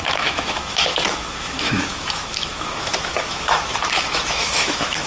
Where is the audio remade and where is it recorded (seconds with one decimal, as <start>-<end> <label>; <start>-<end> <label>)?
0.0-5.1 remade